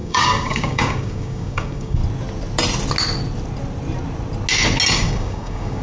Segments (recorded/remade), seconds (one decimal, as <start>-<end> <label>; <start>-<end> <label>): 0.0-2.0 remade; 2.0-4.9 recorded; 4.9-5.8 remade